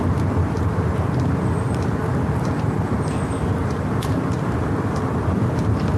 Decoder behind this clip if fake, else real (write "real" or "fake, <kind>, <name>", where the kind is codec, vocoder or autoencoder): real